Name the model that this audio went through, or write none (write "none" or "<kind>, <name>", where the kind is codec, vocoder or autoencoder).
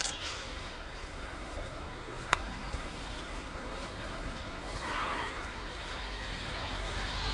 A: codec, SNAC